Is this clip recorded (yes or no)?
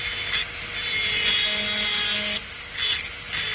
yes